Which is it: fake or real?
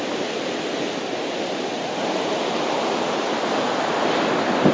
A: real